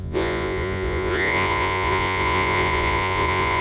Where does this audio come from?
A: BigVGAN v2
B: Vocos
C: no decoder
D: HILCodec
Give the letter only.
B